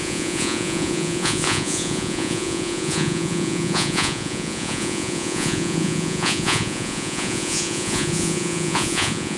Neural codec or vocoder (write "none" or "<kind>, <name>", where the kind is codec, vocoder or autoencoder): vocoder, Vocos